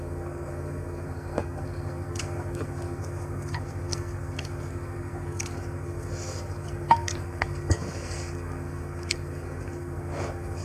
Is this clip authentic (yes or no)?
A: no